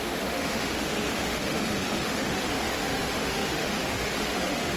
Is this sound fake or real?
fake